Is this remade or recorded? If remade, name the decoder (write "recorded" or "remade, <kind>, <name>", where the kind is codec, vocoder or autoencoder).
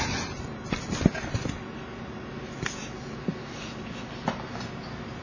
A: recorded